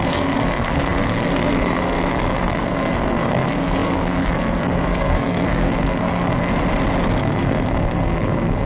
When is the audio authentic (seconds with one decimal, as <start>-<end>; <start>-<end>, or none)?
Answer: 6.5-7.2